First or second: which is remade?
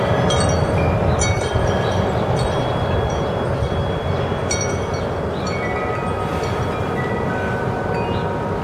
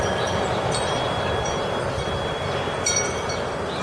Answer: second